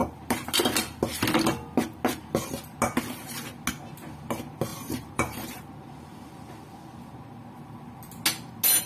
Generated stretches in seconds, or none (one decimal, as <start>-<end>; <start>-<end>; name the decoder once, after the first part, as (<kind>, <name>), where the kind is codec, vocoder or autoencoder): 4.7-5.7 (vocoder, BigVGAN v2)